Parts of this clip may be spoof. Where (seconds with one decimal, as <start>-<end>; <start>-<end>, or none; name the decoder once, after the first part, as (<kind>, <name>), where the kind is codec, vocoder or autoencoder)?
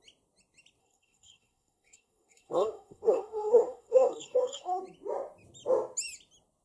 0.8-4.8 (codec, SNAC)